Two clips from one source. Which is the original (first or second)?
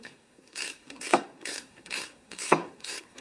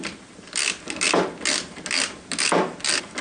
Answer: second